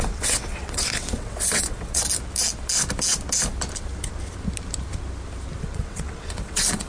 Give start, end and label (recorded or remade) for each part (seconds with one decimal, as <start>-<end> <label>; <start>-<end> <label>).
0.0-2.0 remade; 2.0-5.6 recorded; 5.6-6.9 remade

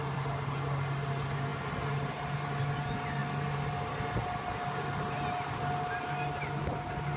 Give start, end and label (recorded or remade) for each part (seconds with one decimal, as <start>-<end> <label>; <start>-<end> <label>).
0.0-7.2 recorded

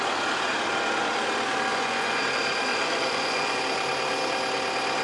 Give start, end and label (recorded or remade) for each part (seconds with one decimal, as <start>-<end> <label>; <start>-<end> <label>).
0.0-1.7 recorded; 1.7-2.2 remade; 2.2-2.7 recorded; 2.7-3.6 remade; 3.6-5.0 recorded

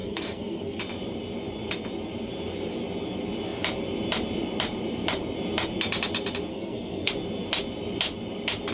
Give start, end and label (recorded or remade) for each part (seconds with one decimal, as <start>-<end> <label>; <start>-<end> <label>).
0.0-0.8 remade; 0.8-6.5 recorded; 6.5-7.1 remade; 7.1-8.7 recorded

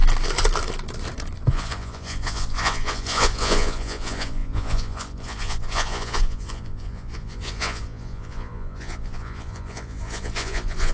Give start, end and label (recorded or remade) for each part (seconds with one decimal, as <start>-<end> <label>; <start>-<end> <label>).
0.0-1.5 recorded; 1.5-10.9 remade

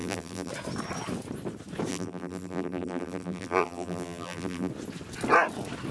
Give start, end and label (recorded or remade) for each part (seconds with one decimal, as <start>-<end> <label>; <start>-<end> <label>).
0.0-0.5 remade; 0.5-1.9 recorded; 1.9-4.7 remade; 4.7-5.9 recorded

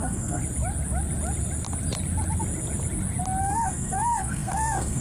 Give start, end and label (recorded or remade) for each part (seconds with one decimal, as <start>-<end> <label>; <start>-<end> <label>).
0.0-0.4 remade; 0.4-3.4 recorded; 3.4-5.0 remade